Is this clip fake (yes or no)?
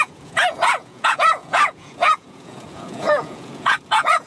yes